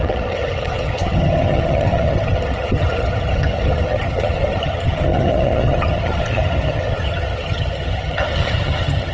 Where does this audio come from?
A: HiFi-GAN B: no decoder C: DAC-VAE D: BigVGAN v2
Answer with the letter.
A